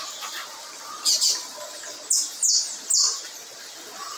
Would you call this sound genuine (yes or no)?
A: yes